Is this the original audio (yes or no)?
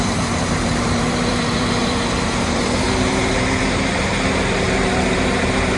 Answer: no